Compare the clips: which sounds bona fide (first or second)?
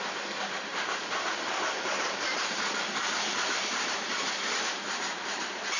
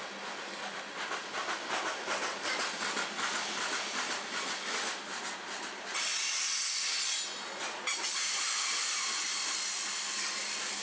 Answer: second